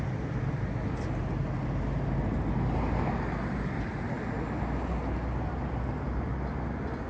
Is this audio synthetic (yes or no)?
no